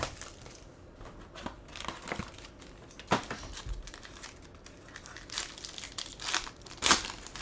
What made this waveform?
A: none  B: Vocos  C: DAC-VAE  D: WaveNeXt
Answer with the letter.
A